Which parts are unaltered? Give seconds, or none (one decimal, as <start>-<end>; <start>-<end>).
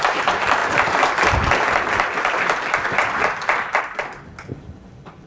0.0-5.3